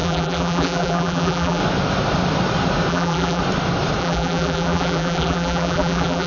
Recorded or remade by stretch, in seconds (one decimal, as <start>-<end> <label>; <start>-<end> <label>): 0.0-1.6 remade; 1.6-2.9 recorded; 2.9-3.4 remade; 3.4-4.0 recorded; 4.0-6.3 remade